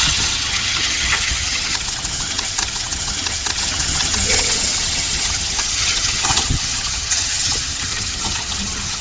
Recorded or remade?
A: remade